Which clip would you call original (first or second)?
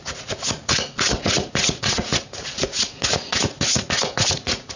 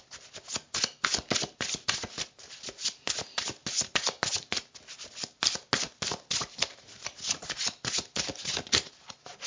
second